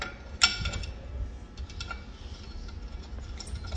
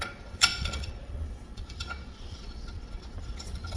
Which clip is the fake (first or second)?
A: second